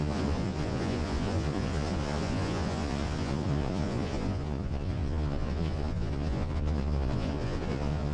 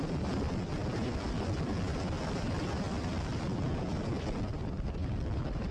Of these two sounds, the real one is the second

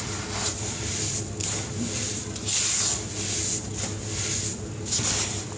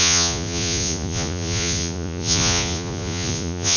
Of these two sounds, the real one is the first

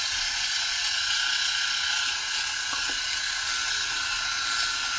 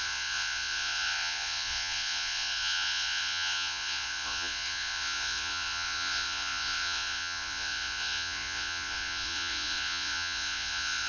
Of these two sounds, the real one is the first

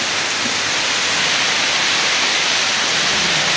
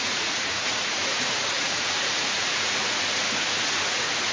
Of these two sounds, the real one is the first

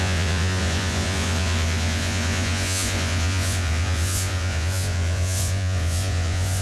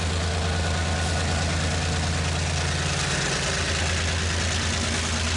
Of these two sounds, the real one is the second